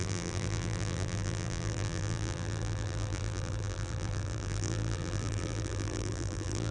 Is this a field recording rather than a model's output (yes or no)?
no